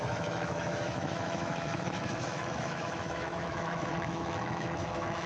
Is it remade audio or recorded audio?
remade